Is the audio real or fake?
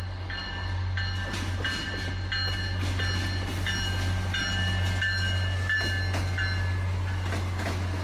real